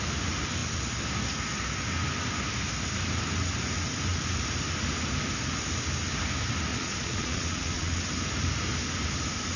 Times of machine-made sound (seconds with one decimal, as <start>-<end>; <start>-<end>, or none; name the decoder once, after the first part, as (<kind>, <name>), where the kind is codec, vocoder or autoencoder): 6.7-8.0 (vocoder, Vocos)